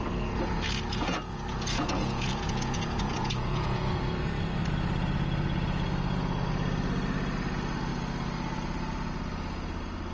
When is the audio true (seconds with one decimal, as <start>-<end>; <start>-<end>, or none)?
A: 0.0-1.0; 4.0-10.1